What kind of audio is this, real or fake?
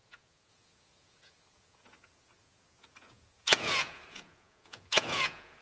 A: fake